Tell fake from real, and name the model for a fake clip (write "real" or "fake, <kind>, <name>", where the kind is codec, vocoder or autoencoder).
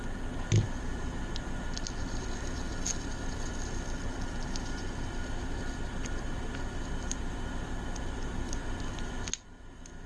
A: real